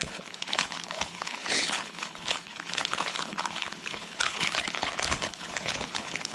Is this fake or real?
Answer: fake